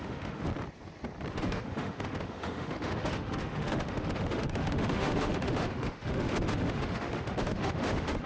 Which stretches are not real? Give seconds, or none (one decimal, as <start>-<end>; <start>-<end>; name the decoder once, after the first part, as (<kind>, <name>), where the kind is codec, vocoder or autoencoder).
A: 0.0-0.5 (autoencoder, DAC-VAE); 1.3-8.3